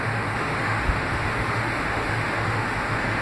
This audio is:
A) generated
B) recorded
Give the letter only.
A